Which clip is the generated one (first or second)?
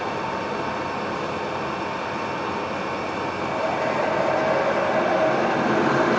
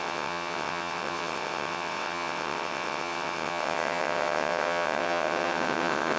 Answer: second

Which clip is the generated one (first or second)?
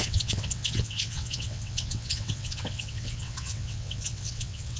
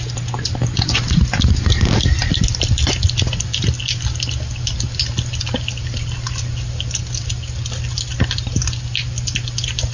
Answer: first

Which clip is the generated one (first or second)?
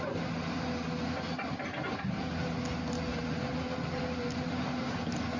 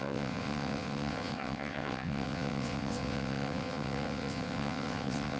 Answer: second